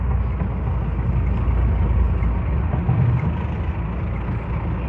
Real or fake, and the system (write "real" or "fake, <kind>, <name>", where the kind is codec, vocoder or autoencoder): real